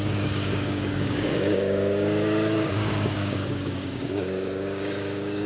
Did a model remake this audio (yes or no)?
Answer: yes